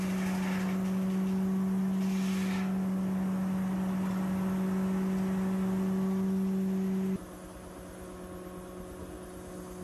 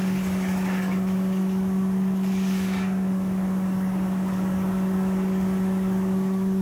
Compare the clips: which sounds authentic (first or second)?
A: first